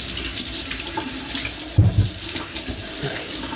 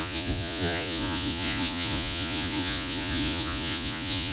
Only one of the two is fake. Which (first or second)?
second